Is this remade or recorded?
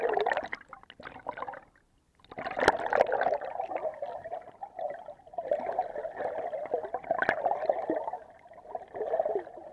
recorded